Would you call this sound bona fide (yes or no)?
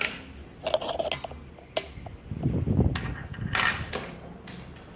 yes